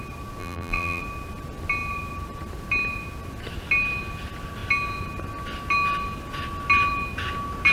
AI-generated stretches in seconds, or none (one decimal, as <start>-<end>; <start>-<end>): 0.4-1.0